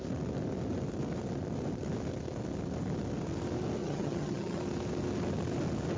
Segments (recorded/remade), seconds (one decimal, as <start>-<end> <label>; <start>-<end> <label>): 0.0-3.8 recorded; 3.8-4.6 remade; 4.6-6.0 recorded